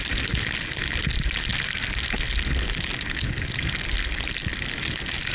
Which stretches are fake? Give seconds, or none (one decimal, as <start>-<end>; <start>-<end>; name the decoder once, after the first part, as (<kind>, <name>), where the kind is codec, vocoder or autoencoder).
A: none